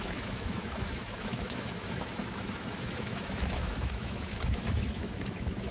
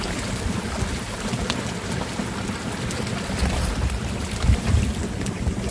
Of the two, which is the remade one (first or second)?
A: first